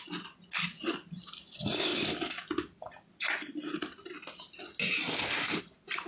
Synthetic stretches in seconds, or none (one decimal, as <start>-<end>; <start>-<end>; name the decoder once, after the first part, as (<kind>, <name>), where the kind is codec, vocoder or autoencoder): none